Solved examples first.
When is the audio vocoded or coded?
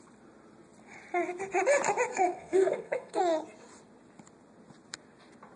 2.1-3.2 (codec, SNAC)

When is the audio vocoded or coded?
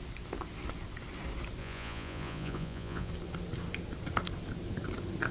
1.6-3.1 (vocoder, Vocos)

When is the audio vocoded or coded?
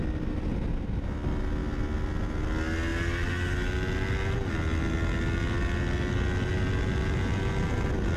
none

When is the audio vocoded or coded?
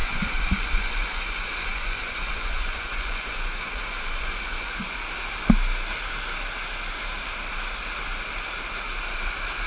0.0-5.0 (vocoder, Vocos)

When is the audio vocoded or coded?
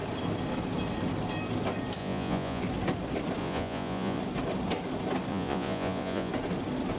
2.0-2.6 (vocoder, Vocos); 3.4-4.2; 5.3-6.3